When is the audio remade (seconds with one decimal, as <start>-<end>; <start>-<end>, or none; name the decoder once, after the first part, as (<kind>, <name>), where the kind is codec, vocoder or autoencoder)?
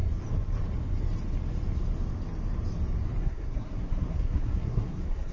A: 3.2-5.3 (codec, SNAC)